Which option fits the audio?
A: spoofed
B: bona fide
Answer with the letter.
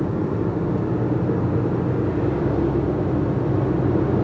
B